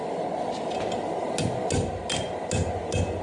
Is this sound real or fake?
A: real